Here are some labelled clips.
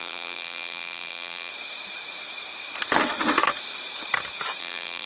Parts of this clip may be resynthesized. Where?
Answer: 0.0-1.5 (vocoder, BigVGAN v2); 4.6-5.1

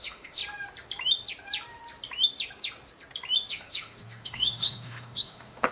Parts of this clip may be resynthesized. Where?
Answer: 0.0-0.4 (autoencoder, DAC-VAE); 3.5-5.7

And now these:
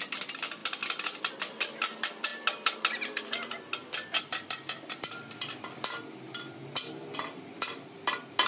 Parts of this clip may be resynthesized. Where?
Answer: none

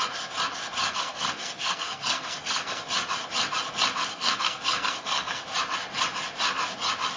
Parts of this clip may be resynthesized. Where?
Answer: 0.8-2.8 (codec, SNAC); 4.1-5.4

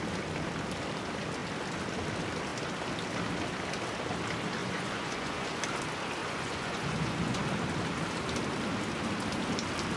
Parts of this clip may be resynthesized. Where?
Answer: 4.6-5.6 (vocoder, Vocos); 6.2-7.4